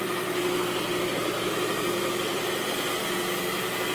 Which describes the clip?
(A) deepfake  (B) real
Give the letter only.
B